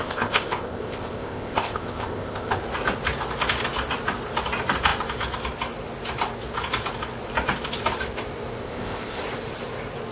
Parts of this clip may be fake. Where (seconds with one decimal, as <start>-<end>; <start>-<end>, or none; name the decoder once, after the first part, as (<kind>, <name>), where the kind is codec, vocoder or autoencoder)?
0.0-2.6 (codec, ZipCodec); 8.6-9.2